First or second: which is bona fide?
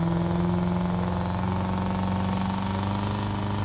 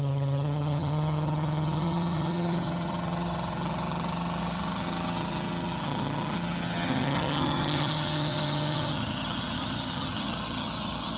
first